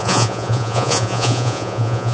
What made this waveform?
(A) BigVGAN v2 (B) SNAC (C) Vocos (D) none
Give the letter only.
C